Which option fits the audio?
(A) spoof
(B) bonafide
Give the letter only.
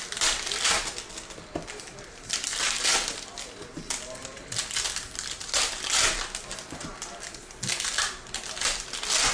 B